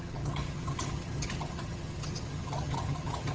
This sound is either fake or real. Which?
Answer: fake